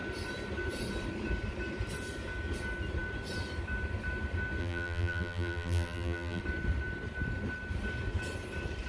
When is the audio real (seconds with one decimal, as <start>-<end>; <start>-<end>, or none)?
0.0-4.6; 6.4-8.9